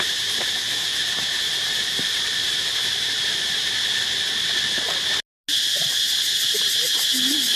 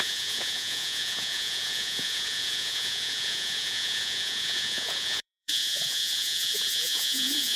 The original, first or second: first